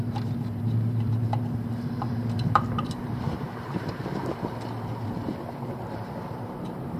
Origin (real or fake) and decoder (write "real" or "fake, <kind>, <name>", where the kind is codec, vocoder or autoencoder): fake, vocoder, BigVGAN v2